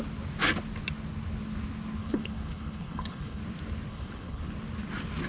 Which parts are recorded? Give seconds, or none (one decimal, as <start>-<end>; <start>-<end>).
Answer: 0.0-2.0; 3.4-3.9; 4.5-5.3